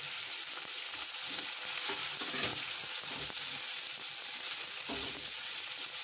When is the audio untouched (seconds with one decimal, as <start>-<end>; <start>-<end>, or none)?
none